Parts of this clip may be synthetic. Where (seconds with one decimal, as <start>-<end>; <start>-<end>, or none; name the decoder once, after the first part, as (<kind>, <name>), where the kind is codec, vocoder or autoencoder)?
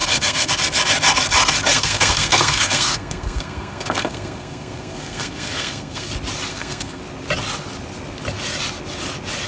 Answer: 0.0-0.5 (codec, SNAC); 1.7-6.1; 6.5-7.0